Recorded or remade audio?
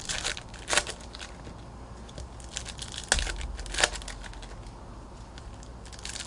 recorded